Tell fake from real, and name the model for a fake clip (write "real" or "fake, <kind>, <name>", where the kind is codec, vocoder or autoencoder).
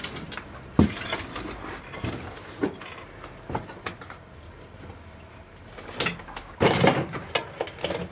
real